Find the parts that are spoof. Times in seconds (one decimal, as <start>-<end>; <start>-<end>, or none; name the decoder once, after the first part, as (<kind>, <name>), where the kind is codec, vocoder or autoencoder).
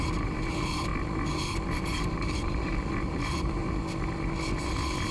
0.0-0.9 (vocoder, BigVGAN v2); 1.8-3.6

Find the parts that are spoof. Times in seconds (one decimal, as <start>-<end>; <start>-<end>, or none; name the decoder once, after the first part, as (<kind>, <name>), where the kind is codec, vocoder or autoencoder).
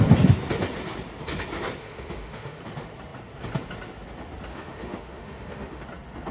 1.8-2.6 (autoencoder, DAC-VAE); 4.5-5.8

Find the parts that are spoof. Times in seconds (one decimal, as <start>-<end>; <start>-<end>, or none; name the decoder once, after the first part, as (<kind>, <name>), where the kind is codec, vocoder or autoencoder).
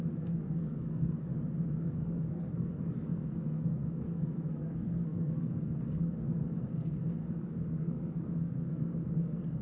0.0-1.3 (codec, SNAC); 1.8-9.6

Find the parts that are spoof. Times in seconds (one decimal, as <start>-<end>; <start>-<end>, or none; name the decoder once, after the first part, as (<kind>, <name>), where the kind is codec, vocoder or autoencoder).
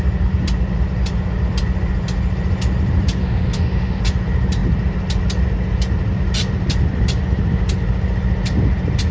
3.2-4.0 (autoencoder, DAC-VAE)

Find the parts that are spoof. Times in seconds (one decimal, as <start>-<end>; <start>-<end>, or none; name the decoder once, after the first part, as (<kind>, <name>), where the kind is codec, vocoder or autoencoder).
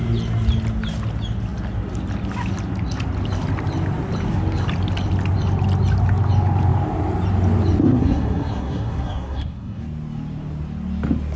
7.8-9.8 (codec, SNAC)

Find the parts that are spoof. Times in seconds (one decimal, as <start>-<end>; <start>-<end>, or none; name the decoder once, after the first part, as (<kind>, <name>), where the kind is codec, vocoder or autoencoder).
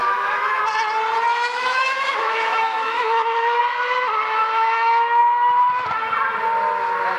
0.0-0.6 (autoencoder, DAC-VAE); 1.3-3.6; 4.4-5.2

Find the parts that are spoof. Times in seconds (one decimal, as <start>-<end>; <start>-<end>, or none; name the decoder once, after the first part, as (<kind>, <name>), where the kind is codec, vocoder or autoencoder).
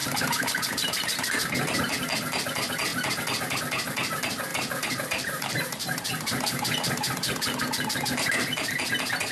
0.0-1.9 (vocoder, BigVGAN v2); 4.5-7.6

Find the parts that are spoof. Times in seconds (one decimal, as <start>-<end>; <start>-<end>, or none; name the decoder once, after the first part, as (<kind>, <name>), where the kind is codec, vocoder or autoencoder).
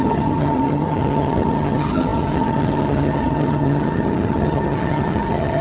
0.0-5.6 (vocoder, HiFi-GAN)